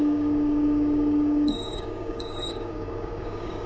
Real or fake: fake